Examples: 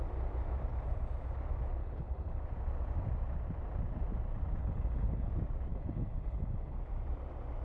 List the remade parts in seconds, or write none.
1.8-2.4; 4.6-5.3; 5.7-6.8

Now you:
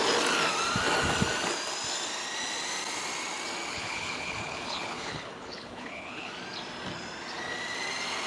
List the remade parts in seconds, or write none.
3.7-6.3

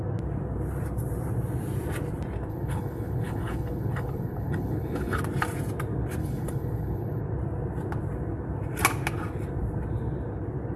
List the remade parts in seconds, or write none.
2.5-5.2; 6.2-7.2

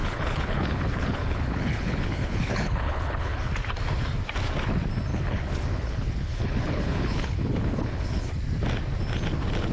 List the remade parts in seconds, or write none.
0.0-3.5; 5.1-8.4

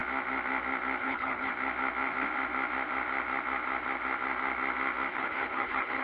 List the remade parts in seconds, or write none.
1.0-1.5; 5.1-6.0

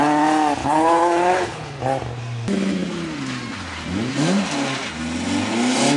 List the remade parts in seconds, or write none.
0.6-1.8